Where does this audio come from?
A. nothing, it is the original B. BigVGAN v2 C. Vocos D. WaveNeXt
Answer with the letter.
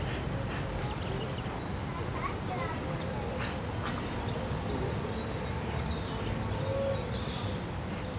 A